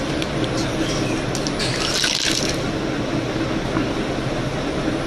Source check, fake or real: real